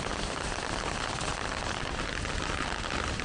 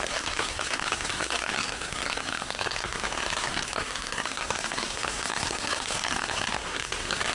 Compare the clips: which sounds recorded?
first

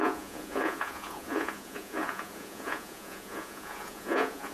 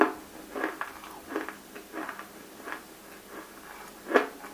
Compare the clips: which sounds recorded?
second